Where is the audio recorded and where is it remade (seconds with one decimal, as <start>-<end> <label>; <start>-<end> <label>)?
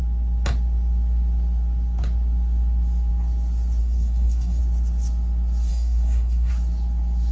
0.0-3.8 recorded; 3.8-4.6 remade; 4.6-5.7 recorded; 5.7-6.5 remade; 6.5-7.3 recorded